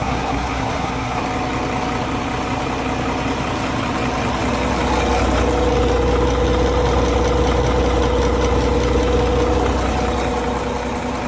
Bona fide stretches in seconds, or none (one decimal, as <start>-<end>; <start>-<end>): 1.2-11.3